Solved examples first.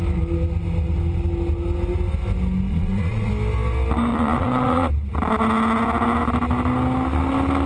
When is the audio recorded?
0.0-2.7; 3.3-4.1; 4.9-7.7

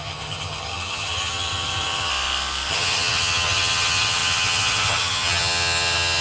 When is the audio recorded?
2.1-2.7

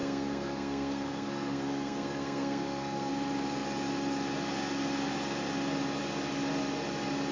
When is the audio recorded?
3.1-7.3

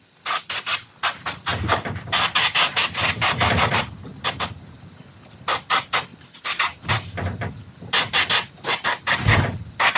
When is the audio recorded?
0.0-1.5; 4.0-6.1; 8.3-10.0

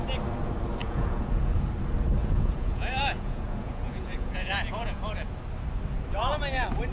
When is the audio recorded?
0.0-0.8; 1.7-2.2; 5.0-6.9

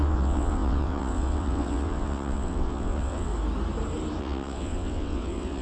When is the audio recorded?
3.3-4.2

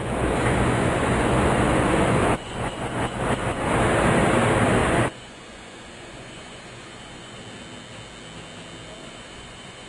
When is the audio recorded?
3.7-4.8; 7.4-9.0